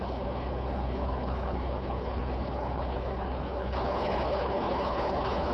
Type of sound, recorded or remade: remade